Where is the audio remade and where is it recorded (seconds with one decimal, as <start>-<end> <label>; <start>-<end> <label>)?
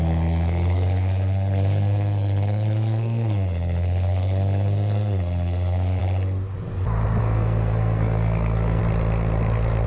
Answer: 0.0-6.0 remade; 6.0-7.2 recorded; 7.2-8.8 remade; 8.8-9.9 recorded